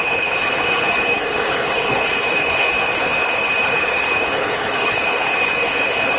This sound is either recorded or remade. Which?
remade